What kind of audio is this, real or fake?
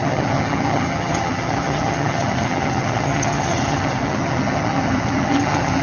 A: fake